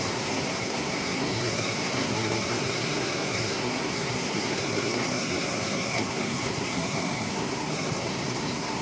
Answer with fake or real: fake